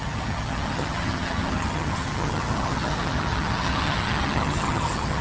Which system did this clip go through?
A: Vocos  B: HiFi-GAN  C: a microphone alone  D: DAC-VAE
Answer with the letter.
B